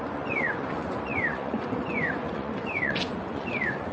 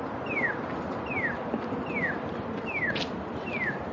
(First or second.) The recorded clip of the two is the second